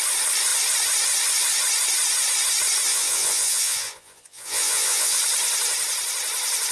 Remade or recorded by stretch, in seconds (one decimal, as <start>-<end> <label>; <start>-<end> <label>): 0.0-2.9 recorded; 2.9-5.2 remade; 5.2-6.7 recorded